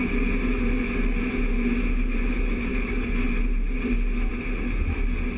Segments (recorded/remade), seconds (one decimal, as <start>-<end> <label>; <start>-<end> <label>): 0.0-5.4 recorded